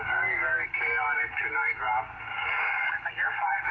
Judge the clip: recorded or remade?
remade